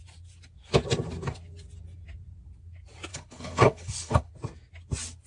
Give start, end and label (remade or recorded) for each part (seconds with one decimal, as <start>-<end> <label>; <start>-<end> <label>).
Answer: 0.0-3.1 recorded; 3.1-4.3 remade; 4.3-5.3 recorded